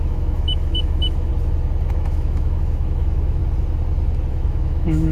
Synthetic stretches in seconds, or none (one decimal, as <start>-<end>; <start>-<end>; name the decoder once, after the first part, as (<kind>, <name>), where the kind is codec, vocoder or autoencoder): 0.0-1.3 (autoencoder, DAC-VAE); 1.9-3.4; 4.3-5.1